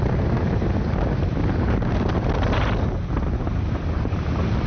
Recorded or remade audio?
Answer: remade